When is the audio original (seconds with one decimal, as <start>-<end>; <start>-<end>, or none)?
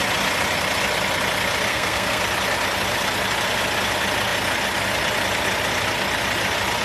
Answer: 0.0-1.7; 2.2-6.8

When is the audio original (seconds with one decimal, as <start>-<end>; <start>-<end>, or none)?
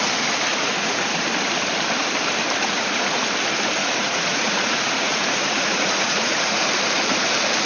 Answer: 0.0-0.5; 1.2-2.6; 3.2-3.8; 6.7-7.7